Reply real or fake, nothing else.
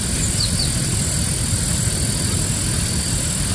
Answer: real